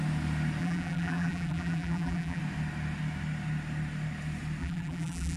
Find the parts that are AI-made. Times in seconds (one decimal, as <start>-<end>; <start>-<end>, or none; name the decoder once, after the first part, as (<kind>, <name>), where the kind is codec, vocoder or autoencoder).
0.6-2.4 (vocoder, BigVGAN v2); 4.6-5.4

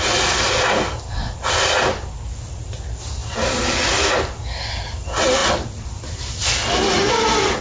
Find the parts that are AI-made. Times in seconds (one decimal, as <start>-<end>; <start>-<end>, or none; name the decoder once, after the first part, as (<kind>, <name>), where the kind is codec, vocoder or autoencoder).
none